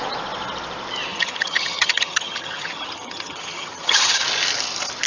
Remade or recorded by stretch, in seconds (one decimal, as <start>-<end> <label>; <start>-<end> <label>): 0.0-1.1 recorded; 1.1-4.2 remade; 4.2-5.1 recorded